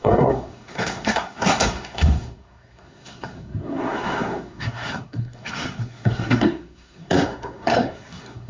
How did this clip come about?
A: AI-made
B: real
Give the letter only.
A